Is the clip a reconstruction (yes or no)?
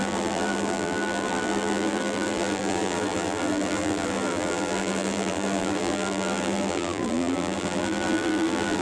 yes